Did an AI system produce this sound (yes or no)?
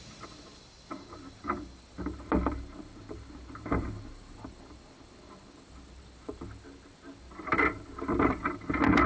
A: no